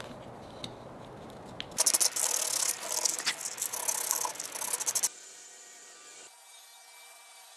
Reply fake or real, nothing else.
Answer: real